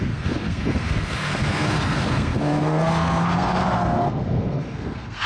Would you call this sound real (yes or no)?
no